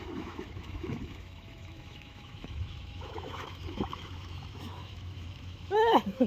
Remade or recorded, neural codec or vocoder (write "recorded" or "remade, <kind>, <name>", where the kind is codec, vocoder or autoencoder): remade, autoencoder, DAC-VAE